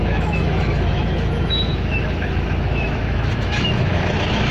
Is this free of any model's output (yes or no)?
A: no